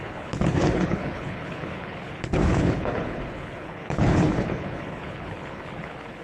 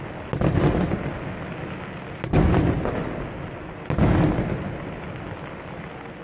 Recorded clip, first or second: second